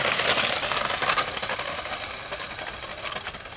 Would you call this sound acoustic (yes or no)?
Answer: yes